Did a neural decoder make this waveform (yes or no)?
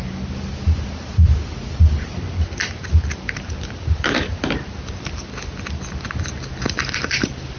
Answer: no